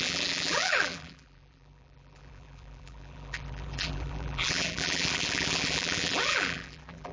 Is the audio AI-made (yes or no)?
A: yes